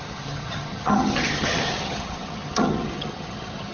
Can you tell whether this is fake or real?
fake